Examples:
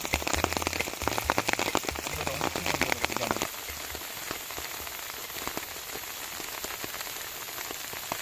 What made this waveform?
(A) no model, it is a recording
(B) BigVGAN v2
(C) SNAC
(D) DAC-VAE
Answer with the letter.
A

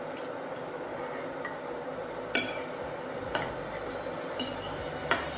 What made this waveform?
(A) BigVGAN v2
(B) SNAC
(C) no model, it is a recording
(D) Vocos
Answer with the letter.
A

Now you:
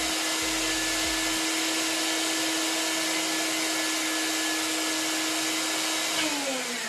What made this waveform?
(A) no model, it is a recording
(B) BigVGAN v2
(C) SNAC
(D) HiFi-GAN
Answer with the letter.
A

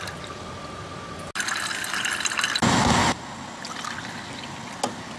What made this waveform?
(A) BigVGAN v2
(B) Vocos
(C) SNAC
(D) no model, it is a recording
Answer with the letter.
D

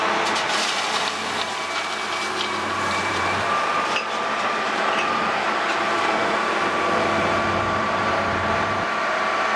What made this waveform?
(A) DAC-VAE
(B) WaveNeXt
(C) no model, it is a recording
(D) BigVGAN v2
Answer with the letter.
D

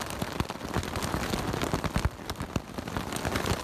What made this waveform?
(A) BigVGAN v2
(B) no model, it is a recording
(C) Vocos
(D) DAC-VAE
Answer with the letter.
B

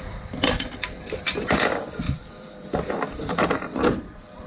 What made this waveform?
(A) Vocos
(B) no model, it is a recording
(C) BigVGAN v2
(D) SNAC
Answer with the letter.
C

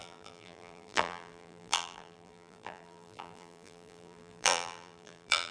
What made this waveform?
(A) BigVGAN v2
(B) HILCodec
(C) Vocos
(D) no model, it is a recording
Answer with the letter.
A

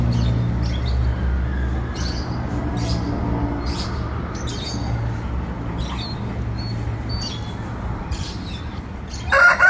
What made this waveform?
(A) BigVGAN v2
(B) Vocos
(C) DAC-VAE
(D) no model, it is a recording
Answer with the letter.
D